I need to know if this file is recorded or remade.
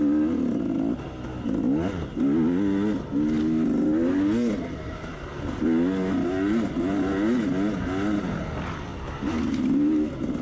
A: recorded